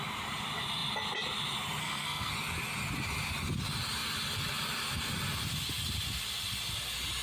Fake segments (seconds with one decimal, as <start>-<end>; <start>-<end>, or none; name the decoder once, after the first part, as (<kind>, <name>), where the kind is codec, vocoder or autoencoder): 1.8-2.3 (codec, SNAC)